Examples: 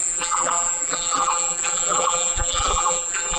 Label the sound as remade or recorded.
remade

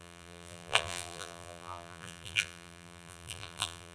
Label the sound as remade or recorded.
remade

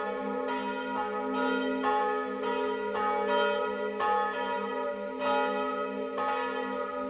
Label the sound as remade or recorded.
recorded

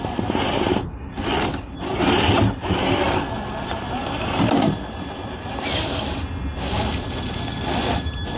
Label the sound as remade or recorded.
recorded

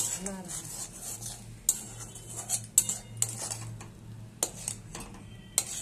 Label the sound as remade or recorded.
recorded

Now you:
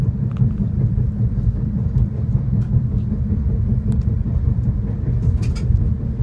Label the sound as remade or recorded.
remade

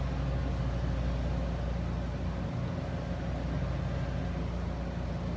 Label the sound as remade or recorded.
recorded